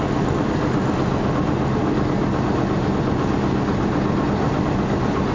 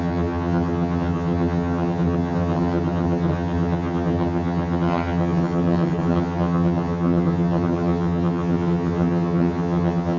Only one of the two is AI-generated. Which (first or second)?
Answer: second